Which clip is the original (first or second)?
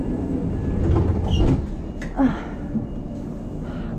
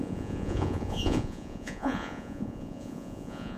first